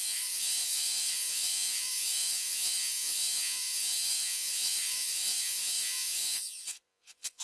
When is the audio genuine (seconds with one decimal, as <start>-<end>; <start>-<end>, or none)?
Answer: none